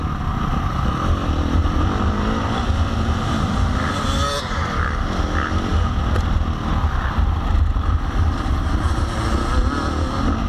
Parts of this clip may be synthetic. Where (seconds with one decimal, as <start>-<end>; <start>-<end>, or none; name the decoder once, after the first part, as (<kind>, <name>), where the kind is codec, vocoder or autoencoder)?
none